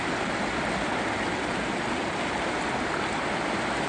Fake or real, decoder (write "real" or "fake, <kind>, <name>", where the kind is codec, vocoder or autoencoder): real